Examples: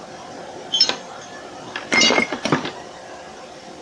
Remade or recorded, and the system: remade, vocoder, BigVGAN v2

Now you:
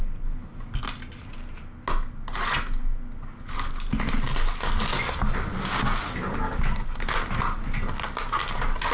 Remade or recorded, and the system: recorded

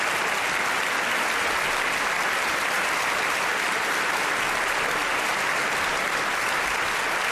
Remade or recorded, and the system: recorded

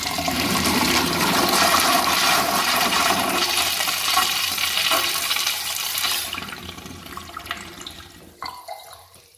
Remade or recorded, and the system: remade, vocoder, BigVGAN v2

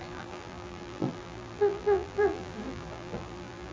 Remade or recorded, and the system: remade, vocoder, BigVGAN v2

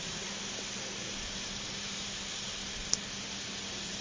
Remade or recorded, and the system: recorded